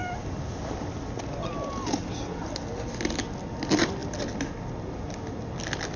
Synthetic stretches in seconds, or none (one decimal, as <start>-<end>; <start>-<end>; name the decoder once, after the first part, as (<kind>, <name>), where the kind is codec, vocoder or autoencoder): none